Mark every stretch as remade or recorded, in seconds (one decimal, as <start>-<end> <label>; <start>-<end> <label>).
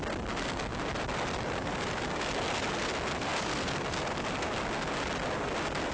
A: 0.0-5.9 recorded